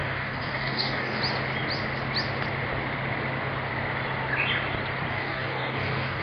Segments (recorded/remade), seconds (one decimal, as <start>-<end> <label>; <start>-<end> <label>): 0.0-1.2 remade; 1.2-5.1 recorded; 5.1-6.2 remade